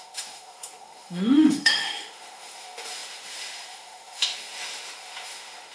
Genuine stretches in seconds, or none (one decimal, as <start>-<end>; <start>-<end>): none